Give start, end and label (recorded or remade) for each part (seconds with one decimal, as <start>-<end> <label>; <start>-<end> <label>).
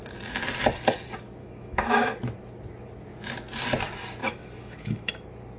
0.0-1.4 recorded; 1.4-2.2 remade; 2.2-4.2 recorded; 4.2-5.1 remade; 5.1-5.6 recorded